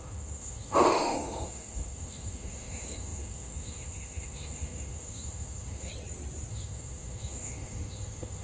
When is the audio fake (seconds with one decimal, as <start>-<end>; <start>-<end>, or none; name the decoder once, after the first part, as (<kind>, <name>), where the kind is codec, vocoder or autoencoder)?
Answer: 0.0-5.9 (autoencoder, DAC-VAE); 6.5-8.4